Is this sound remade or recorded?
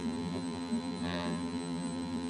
remade